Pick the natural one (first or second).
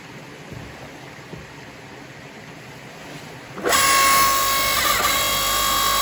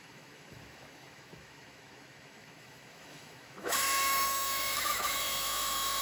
first